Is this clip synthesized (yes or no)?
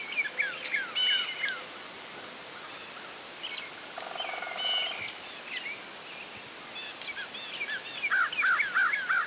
no